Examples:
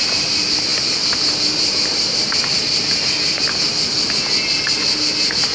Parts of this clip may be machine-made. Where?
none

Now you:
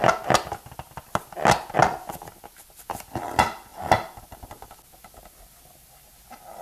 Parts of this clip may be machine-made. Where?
none

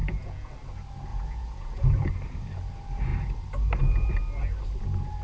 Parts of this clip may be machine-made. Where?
0.0-0.5 (vocoder, Vocos); 1.1-2.1

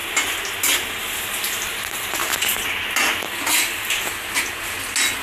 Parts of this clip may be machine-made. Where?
none

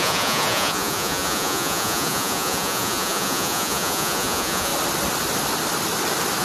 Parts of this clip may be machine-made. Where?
0.0-4.7 (vocoder, Vocos)